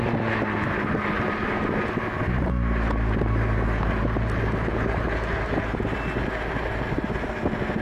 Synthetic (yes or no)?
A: no